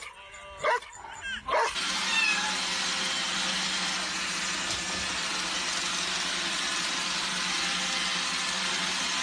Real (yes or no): yes